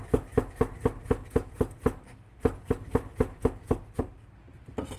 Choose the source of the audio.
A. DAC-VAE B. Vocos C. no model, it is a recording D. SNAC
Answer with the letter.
C